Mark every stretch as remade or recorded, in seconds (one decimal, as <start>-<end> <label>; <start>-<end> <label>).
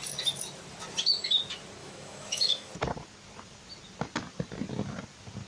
0.0-1.8 recorded; 1.8-2.7 remade; 2.7-5.5 recorded